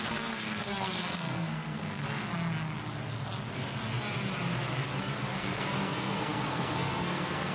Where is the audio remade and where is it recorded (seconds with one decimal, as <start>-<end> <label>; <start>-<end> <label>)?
0.0-2.3 remade; 2.3-5.0 recorded; 5.0-7.5 remade